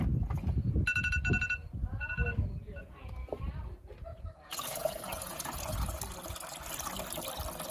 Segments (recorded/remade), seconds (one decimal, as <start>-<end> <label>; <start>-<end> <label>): 0.0-1.6 recorded; 1.6-3.4 remade; 3.4-4.1 recorded; 4.1-6.0 remade; 6.0-7.7 recorded